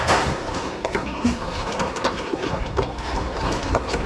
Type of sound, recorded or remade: remade